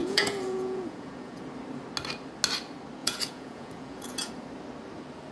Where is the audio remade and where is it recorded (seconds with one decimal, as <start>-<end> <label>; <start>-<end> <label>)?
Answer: 0.0-1.4 remade; 1.4-3.0 recorded; 3.0-4.3 remade; 4.3-5.3 recorded